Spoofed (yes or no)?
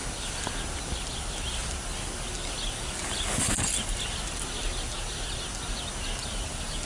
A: no